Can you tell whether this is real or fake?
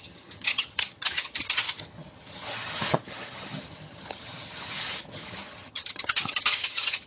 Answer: fake